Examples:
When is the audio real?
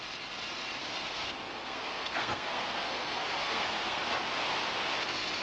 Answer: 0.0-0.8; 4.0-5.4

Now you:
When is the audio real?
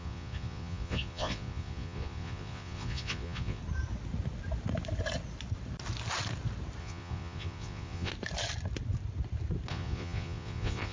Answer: 3.6-6.8; 8.1-9.7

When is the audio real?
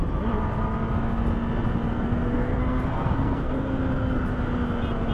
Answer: 0.0-1.9; 3.8-5.1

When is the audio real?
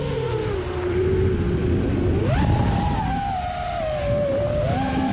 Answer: 0.0-5.1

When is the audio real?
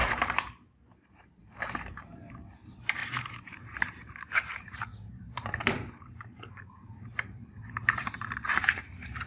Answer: 0.8-1.4; 2.2-3.0; 7.5-9.3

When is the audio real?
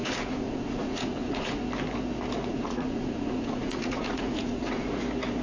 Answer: 1.6-2.5; 4.9-5.4